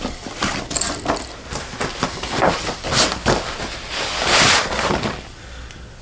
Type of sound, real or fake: real